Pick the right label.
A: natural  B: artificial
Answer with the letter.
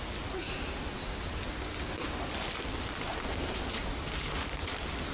A